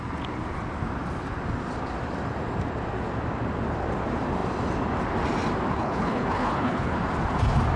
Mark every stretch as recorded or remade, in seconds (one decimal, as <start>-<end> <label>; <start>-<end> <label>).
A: 0.0-5.7 recorded; 5.7-7.0 remade; 7.0-7.8 recorded